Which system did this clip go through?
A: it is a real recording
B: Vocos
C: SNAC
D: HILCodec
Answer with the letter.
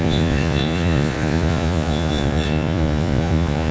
B